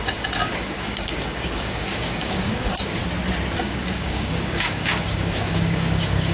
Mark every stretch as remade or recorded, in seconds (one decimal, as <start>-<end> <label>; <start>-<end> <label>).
0.0-3.0 remade; 3.0-3.6 recorded; 3.6-6.3 remade